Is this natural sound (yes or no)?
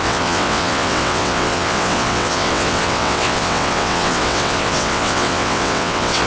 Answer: no